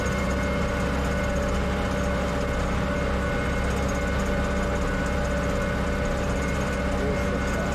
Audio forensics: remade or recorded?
recorded